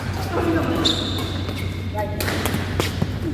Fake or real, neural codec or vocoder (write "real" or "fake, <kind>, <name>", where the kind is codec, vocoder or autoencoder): real